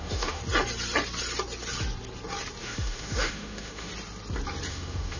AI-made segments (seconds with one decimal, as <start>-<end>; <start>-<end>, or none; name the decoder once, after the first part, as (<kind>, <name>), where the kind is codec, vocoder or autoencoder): 0.0-0.4 (autoencoder, DAC-VAE); 2.6-3.9; 4.7-5.2